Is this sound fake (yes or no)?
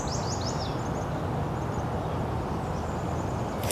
no